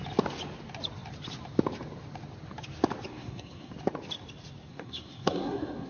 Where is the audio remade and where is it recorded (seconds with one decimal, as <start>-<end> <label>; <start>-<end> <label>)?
0.0-3.1 recorded; 3.1-3.7 remade; 3.7-4.7 recorded; 4.7-5.9 remade